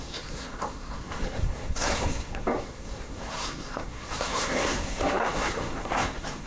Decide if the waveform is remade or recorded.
remade